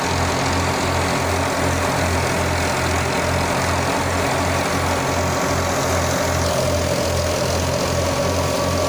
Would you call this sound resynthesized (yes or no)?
no